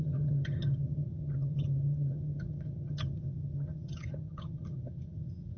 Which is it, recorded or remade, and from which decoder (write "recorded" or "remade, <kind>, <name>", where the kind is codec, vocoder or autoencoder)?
remade, vocoder, HiFi-GAN